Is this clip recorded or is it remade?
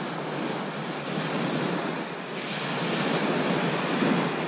recorded